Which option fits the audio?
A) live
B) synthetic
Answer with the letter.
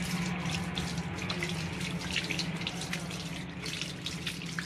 A